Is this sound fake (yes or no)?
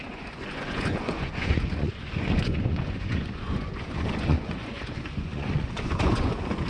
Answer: yes